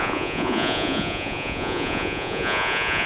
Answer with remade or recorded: remade